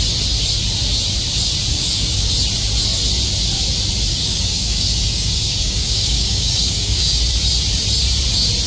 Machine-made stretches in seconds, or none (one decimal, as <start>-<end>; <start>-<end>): 1.7-2.3; 4.1-7.2